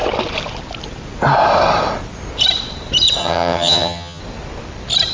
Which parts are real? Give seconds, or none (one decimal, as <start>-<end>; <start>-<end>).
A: 0.0-3.2; 4.2-5.1